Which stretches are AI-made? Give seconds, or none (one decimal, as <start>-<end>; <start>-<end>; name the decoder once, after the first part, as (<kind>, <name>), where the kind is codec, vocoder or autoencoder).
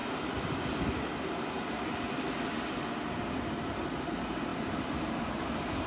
0.0-2.0 (vocoder, BigVGAN v2)